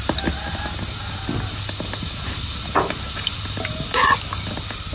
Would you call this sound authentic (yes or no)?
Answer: yes